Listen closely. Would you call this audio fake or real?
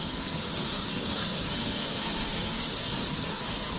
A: fake